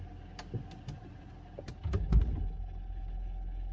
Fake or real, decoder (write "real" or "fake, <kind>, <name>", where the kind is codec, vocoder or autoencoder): real